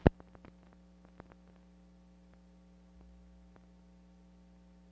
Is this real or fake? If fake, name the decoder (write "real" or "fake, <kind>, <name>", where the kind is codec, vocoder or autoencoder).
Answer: real